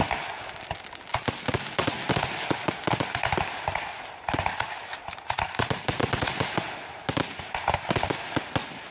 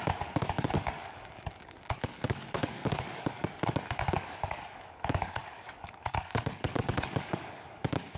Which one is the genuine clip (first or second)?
first